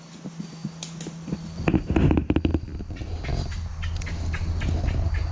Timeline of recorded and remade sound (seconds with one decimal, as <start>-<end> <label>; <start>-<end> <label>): 0.0-5.3 recorded